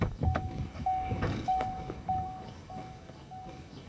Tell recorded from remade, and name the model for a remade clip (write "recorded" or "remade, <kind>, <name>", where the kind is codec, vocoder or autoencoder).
remade, codec, DAC